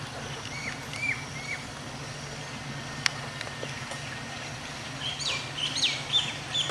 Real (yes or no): yes